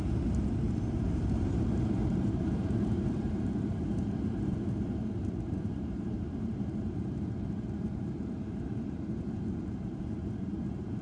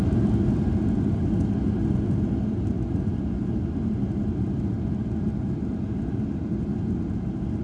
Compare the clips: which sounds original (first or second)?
second